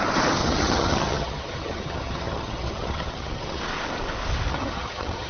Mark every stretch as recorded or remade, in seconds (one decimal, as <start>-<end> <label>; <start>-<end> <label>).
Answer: 0.0-0.4 recorded; 0.4-3.6 remade; 3.6-4.5 recorded; 4.5-5.3 remade